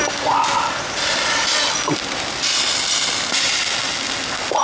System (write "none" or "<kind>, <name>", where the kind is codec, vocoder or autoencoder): none